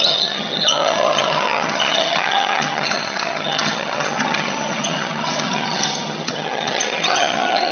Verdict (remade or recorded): remade